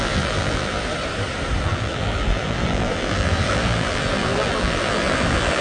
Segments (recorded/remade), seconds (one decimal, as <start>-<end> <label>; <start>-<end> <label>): 0.0-0.9 remade; 0.9-1.6 recorded; 1.6-5.6 remade